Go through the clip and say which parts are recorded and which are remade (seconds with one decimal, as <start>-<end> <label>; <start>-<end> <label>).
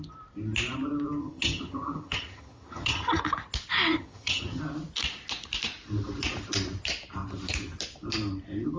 0.0-1.2 recorded; 1.2-3.2 remade; 3.2-3.9 recorded; 3.9-4.6 remade; 4.6-8.8 recorded